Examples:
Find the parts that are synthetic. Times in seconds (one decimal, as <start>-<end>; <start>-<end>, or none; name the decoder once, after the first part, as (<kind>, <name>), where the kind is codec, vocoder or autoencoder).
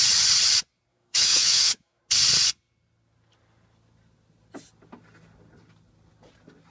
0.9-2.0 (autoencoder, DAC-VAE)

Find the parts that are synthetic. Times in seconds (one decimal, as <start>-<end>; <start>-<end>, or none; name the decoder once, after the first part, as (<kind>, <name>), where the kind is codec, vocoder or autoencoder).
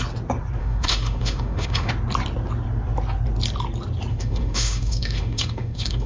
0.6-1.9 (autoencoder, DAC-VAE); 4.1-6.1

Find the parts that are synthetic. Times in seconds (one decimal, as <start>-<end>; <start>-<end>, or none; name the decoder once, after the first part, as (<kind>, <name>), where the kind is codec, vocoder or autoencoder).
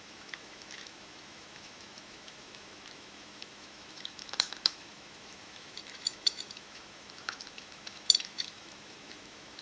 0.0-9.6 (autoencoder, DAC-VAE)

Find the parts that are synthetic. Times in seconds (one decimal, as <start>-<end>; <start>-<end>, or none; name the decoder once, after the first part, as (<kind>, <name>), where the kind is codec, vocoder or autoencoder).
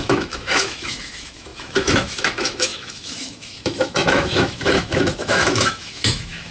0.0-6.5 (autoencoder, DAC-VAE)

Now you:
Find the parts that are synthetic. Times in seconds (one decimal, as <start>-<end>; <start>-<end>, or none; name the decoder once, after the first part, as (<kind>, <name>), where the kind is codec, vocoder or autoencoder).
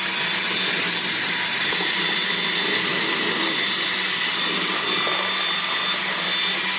none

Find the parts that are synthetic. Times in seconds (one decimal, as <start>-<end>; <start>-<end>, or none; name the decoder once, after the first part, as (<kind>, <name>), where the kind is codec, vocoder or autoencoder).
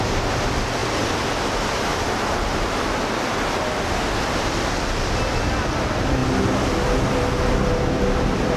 none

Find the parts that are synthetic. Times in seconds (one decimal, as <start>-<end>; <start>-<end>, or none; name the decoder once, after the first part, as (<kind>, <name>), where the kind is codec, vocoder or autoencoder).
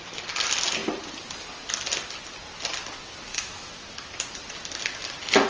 3.3-3.8 (autoencoder, DAC-VAE)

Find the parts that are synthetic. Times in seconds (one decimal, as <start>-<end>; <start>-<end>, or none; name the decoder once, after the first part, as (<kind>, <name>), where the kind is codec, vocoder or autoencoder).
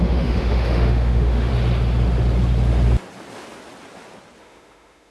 0.0-1.5 (autoencoder, DAC-VAE); 4.4-5.1